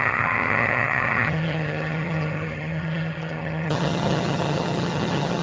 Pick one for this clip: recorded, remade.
remade